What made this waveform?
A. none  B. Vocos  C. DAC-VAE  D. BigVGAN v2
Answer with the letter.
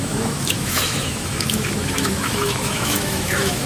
C